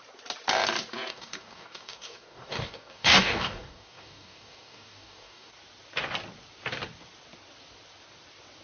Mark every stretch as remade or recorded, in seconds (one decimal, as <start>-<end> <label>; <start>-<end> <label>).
0.0-1.1 recorded; 1.1-5.5 remade; 5.5-8.6 recorded